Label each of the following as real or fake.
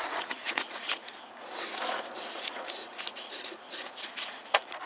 fake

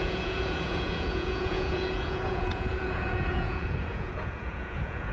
fake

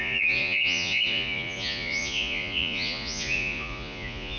fake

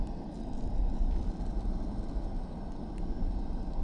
real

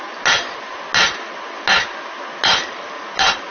real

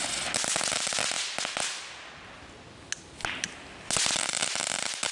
real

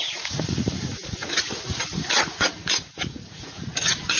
fake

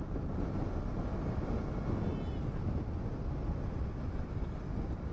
real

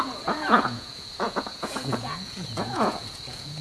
fake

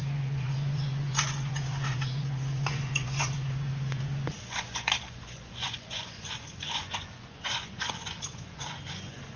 fake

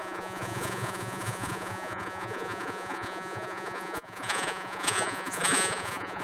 fake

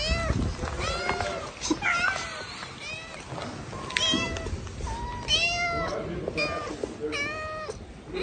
real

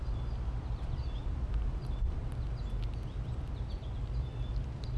real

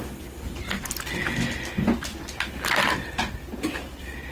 real